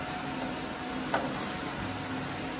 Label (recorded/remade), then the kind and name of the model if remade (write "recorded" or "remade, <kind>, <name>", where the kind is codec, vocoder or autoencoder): recorded